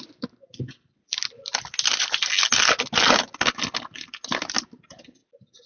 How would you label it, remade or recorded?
recorded